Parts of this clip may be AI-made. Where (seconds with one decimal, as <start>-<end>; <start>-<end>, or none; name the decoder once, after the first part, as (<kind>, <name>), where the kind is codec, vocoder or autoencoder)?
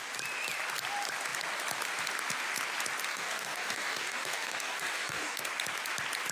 3.1-5.5 (codec, DAC)